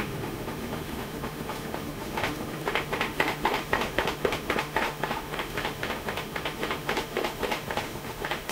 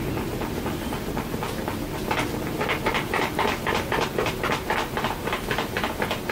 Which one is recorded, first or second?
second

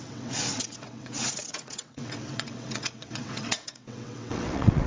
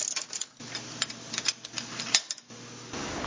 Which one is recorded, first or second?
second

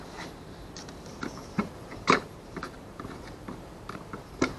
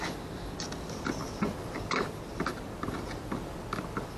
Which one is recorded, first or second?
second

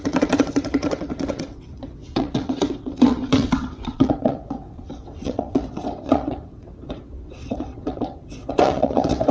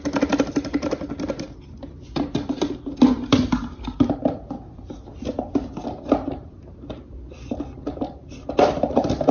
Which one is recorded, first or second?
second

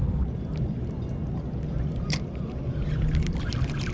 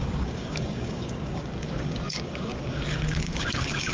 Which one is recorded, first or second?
first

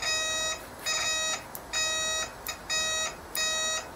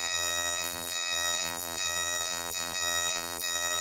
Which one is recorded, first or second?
first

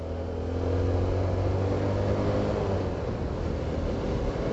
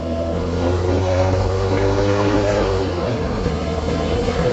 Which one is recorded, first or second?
first